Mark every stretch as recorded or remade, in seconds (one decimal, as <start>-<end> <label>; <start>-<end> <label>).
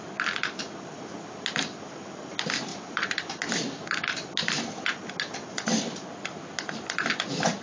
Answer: 0.0-2.7 recorded; 2.7-3.2 remade; 3.2-7.6 recorded